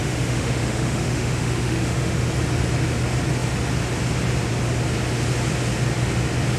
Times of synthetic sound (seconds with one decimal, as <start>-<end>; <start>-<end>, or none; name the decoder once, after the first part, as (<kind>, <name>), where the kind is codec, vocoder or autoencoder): 0.0-2.3 (autoencoder, DAC-VAE)